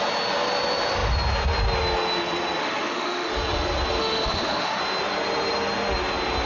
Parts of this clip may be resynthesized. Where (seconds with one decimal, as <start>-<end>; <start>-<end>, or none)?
2.6-3.3; 4.0-4.8